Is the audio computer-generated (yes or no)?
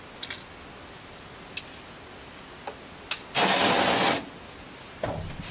no